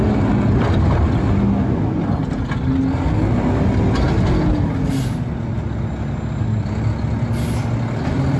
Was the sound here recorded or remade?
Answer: recorded